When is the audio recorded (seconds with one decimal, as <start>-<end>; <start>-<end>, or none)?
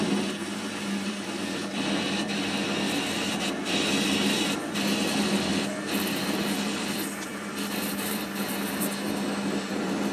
0.0-10.1